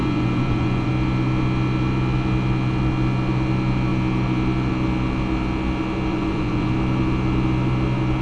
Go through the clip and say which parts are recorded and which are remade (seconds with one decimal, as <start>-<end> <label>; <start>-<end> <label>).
0.0-0.9 remade; 0.9-6.1 recorded; 6.1-6.7 remade; 6.7-8.2 recorded